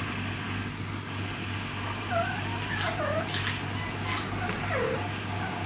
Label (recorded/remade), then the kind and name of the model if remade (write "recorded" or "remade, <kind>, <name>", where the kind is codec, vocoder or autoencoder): recorded